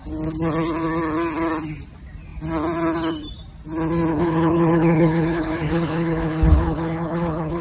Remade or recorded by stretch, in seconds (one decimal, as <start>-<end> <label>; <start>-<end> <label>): 0.0-4.1 recorded; 4.1-7.6 remade